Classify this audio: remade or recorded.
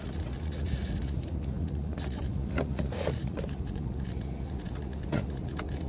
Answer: remade